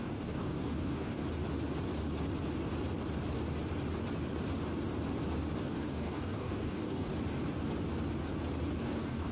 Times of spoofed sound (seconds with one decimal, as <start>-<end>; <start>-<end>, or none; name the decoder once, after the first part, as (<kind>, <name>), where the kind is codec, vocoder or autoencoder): 0.0-1.2 (codec, DAC); 5.6-7.1; 8.8-9.3